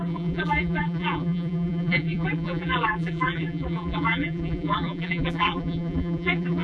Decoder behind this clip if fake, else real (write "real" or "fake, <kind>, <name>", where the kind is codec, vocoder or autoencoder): fake, vocoder, BigVGAN v2